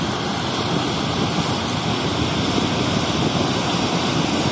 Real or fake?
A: real